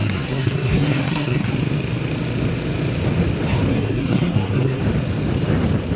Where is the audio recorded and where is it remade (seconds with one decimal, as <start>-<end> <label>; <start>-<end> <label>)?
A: 0.0-1.5 remade; 1.5-3.7 recorded; 3.7-4.8 remade; 4.8-6.0 recorded